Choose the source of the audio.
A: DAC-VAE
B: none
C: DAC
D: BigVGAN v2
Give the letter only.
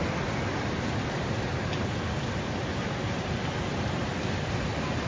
B